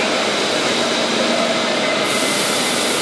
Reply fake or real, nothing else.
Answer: real